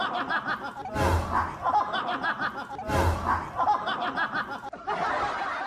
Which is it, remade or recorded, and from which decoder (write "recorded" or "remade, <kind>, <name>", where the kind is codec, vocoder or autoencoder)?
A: recorded